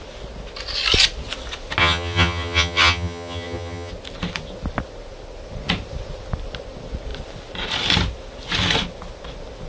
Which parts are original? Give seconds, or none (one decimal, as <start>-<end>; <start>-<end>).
0.0-1.8; 3.9-9.7